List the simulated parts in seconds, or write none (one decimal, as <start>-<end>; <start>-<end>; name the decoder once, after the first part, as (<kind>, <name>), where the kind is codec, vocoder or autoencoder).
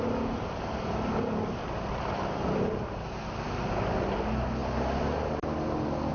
none